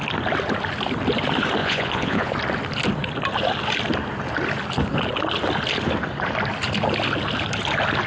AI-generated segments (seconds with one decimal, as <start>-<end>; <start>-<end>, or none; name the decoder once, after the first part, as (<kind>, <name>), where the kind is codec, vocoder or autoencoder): 1.6-2.3 (vocoder, Vocos)